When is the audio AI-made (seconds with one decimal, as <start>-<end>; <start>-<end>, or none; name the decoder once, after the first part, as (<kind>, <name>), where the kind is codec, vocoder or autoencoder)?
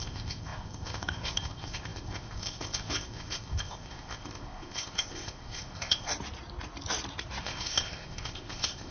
0.0-6.1 (codec, ZipCodec); 7.4-8.9